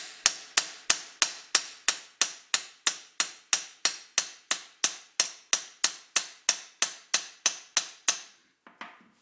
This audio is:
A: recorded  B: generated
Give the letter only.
A